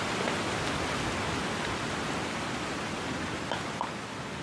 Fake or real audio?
real